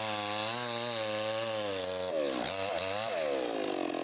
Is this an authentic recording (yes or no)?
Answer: yes